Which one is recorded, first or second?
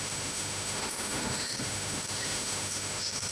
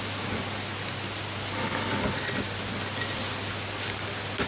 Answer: second